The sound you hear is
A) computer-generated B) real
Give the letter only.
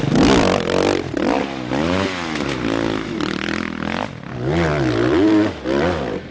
B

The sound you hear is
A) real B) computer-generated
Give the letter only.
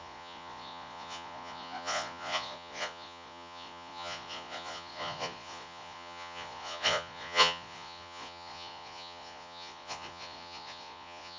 B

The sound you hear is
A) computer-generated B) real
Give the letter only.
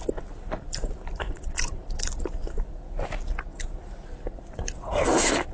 B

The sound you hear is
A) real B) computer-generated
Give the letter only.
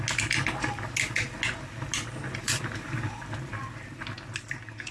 A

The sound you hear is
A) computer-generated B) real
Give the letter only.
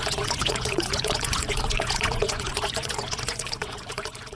A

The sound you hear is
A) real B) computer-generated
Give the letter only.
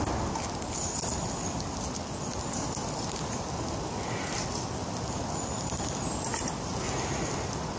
A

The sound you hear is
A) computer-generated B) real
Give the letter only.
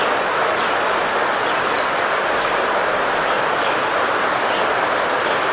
B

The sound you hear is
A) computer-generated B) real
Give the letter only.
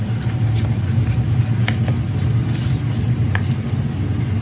B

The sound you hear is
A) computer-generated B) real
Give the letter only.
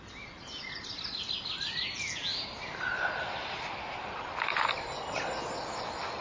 B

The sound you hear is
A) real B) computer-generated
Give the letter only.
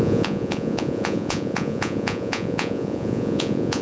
B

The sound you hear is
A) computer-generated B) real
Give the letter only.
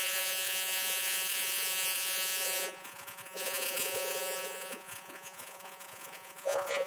A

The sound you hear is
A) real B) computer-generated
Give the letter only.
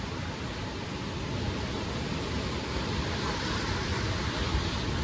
A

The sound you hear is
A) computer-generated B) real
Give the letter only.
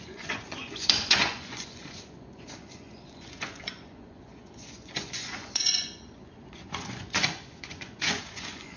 A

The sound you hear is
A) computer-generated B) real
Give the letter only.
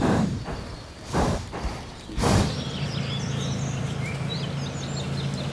B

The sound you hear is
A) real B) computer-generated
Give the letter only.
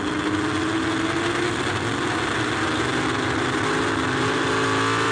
A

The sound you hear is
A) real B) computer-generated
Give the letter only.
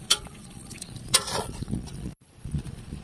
B